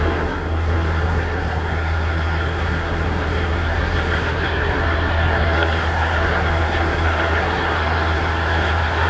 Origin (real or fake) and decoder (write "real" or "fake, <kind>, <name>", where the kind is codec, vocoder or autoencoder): fake, codec, SNAC